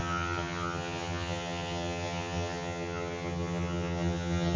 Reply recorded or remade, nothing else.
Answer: remade